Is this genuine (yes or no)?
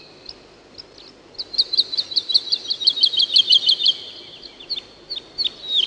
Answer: yes